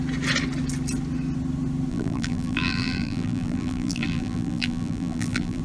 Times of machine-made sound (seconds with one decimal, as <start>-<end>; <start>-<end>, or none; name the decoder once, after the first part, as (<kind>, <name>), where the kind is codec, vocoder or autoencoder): 1.9-5.6 (vocoder, BigVGAN v2)

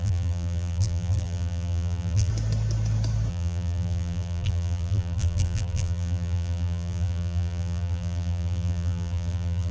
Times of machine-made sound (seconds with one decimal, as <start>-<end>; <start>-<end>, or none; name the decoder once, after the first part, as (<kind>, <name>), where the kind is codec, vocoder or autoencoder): 0.0-2.3 (vocoder, BigVGAN v2); 3.3-9.7

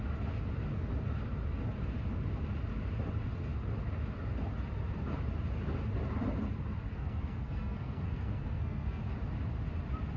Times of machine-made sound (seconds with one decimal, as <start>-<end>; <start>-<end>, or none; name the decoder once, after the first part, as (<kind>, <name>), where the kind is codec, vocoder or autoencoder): 6.9-9.0 (codec, SNAC)